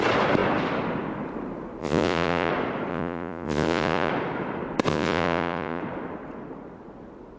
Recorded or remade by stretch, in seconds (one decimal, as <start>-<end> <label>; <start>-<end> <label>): 0.0-1.8 recorded; 1.8-2.5 remade; 2.5-2.9 recorded; 2.9-4.1 remade; 4.1-4.9 recorded; 4.9-5.8 remade; 5.8-7.4 recorded